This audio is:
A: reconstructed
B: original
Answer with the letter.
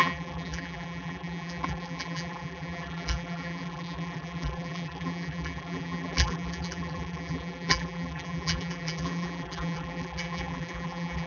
A